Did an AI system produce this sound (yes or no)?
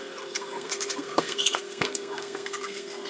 yes